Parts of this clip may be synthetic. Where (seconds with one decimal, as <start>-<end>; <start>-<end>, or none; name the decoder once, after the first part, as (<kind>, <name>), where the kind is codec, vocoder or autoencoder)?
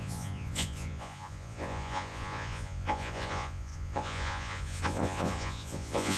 0.0-6.2 (vocoder, Vocos)